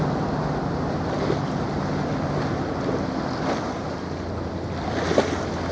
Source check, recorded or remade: recorded